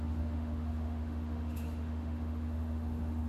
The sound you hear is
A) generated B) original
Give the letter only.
A